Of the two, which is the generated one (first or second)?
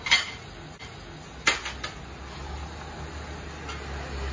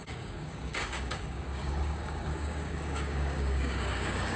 second